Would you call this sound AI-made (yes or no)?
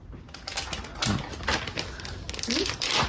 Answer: no